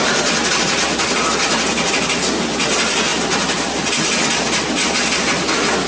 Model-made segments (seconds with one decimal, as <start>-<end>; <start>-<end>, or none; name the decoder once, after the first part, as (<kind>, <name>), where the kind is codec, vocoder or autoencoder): none

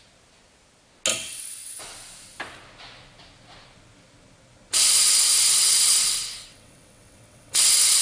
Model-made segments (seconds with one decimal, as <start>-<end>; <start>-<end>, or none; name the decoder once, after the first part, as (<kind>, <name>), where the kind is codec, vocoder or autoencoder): 1.1-1.8 (vocoder, WaveNeXt); 6.5-7.6

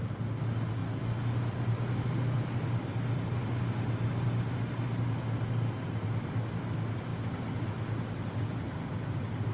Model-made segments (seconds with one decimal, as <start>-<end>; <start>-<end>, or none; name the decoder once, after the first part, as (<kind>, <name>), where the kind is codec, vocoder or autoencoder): none

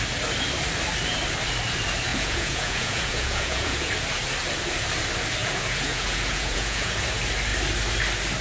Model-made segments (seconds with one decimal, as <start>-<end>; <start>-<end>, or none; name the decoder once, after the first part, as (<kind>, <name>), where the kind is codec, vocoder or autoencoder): 2.1-3.9 (vocoder, Vocos); 5.4-7.0

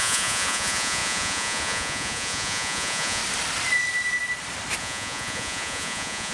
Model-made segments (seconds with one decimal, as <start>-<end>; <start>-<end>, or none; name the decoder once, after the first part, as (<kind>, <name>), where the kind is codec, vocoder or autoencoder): 0.0-3.2 (vocoder, Vocos); 4.8-6.3

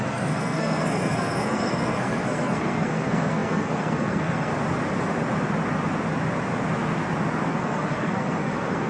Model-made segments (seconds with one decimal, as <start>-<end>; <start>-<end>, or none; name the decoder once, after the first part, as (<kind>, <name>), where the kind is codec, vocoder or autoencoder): 0.0-4.5 (codec, SNAC); 7.5-8.9

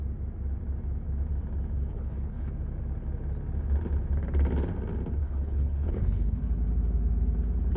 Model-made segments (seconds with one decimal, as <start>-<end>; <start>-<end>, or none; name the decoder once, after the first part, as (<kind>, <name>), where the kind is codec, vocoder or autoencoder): 1.9-2.5 (codec, HILCodec); 5.2-6.4